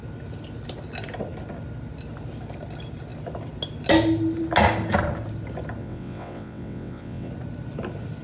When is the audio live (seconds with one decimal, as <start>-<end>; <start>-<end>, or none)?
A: 0.0-5.8; 7.3-8.2